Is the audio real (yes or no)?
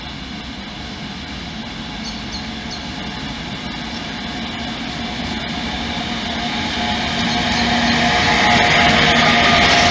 yes